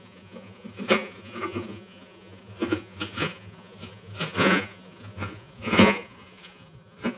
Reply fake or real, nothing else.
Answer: fake